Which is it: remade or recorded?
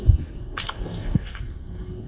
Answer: remade